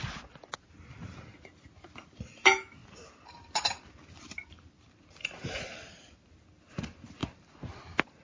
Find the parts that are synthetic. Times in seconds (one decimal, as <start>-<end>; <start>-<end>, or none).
2.8-3.4